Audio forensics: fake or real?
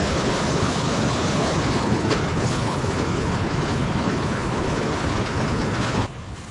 fake